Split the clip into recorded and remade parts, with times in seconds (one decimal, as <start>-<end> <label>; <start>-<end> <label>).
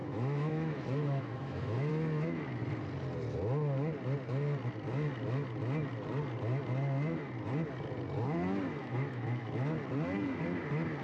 0.0-1.9 remade; 1.9-8.8 recorded; 8.8-9.5 remade; 9.5-11.0 recorded